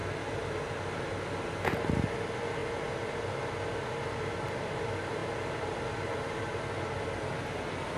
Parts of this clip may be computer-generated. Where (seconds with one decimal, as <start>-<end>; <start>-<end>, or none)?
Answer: none